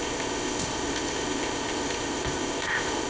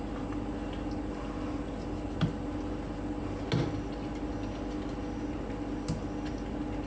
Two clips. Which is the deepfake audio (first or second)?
first